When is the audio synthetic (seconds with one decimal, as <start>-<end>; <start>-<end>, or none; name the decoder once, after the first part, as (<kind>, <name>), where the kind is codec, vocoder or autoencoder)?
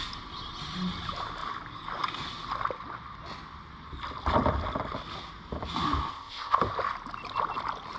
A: 6.1-6.6 (codec, ZipCodec)